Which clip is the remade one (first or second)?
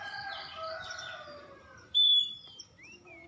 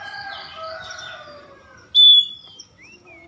first